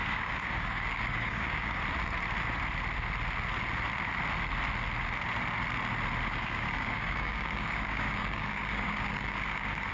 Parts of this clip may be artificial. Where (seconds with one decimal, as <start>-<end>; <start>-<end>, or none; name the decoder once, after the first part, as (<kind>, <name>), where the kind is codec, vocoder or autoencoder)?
0.0-1.8 (codec, DAC); 6.3-9.9